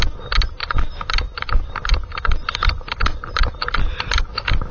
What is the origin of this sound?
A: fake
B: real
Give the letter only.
B